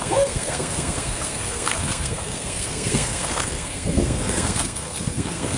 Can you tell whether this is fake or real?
fake